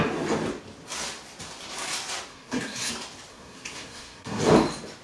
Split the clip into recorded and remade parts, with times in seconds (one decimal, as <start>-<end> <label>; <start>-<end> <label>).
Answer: 0.0-2.3 recorded; 2.3-2.9 remade; 2.9-3.3 recorded; 3.3-4.4 remade; 4.4-5.0 recorded